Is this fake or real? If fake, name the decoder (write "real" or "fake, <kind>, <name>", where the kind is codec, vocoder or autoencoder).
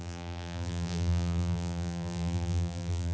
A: fake, vocoder, BigVGAN v2